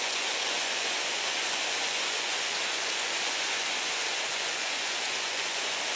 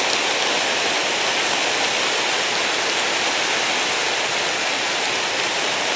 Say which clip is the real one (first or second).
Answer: second